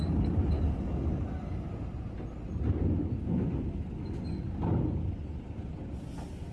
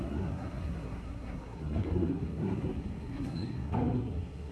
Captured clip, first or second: first